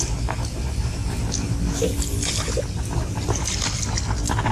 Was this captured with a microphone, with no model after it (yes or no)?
yes